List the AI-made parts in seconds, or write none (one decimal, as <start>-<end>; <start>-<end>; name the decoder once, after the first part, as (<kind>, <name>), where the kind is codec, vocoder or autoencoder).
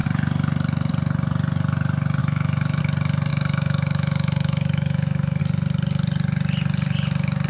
2.2-2.8 (autoencoder, DAC-VAE); 3.3-5.4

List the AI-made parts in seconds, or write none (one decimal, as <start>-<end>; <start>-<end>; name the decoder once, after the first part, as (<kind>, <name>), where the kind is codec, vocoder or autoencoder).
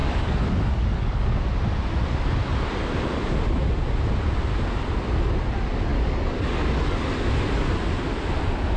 0.0-1.4 (codec, DAC); 5.9-7.0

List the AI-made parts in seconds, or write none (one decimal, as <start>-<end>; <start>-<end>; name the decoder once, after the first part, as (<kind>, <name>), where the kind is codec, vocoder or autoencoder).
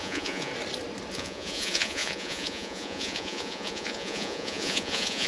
0.0-0.5 (vocoder, Vocos); 1.1-5.3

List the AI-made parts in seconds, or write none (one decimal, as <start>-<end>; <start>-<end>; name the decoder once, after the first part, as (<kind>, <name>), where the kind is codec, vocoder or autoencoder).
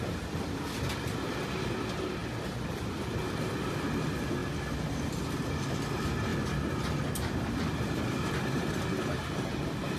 none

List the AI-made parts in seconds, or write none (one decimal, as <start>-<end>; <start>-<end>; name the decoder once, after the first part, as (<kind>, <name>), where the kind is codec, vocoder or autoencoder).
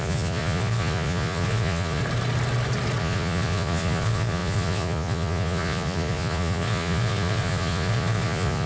0.0-2.0 (vocoder, Vocos); 3.0-8.7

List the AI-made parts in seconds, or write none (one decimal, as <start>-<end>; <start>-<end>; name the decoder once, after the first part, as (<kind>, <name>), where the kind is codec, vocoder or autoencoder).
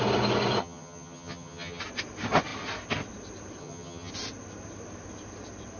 0.6-1.8 (vocoder, HiFi-GAN); 3.6-4.1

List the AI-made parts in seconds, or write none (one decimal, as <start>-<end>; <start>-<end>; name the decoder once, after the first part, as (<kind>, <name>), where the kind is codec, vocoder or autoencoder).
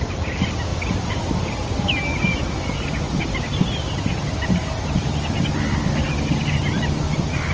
none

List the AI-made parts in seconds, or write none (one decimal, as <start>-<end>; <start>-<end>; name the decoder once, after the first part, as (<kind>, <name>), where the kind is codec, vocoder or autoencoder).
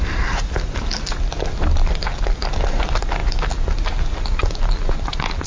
none